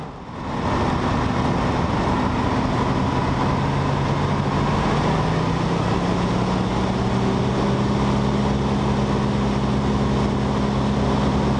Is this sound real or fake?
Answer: real